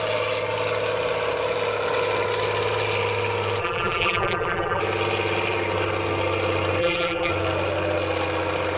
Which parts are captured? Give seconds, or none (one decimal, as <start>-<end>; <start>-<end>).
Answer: 0.0-3.6; 4.8-6.8; 7.3-8.8